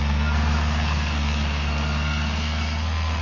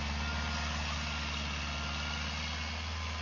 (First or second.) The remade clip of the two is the first